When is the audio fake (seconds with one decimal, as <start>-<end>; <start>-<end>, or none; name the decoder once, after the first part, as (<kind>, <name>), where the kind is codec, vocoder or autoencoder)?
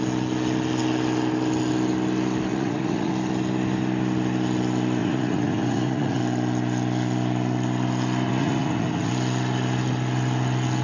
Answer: 2.5-3.1 (vocoder, Vocos); 5.0-6.2; 8.3-9.1